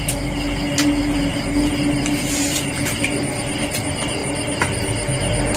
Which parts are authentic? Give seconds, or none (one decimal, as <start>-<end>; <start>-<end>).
0.0-5.6